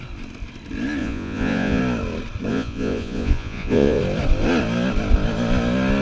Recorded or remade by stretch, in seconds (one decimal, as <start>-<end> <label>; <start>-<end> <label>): 0.0-1.0 recorded; 1.0-1.8 remade; 1.8-2.5 recorded; 2.5-4.0 remade; 4.0-6.0 recorded